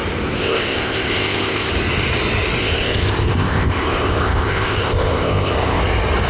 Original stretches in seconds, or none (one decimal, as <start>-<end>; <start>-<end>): 0.0-0.4; 1.7-2.6; 5.8-6.3